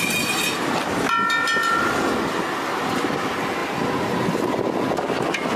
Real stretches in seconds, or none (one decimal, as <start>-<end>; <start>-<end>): 0.0-5.6